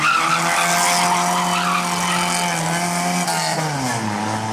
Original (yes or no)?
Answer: yes